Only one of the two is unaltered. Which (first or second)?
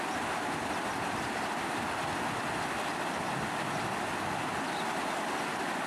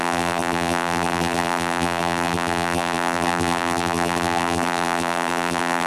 first